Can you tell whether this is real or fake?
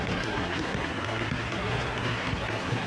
fake